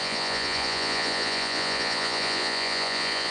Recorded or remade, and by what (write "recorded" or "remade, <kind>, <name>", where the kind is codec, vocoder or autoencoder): remade, vocoder, Vocos